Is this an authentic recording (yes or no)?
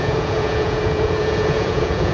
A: no